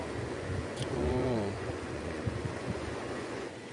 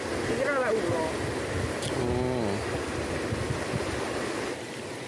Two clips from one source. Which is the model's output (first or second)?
first